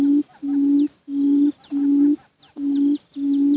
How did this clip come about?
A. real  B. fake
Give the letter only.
A